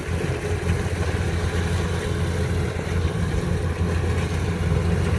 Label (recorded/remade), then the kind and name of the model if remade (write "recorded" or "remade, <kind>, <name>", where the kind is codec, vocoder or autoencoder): recorded